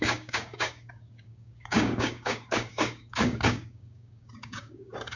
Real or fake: fake